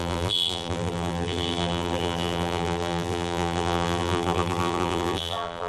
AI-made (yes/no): yes